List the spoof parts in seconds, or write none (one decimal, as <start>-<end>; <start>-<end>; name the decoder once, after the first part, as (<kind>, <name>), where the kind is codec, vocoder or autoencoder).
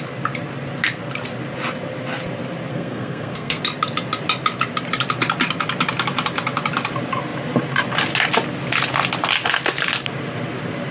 2.7-3.6 (codec, SNAC)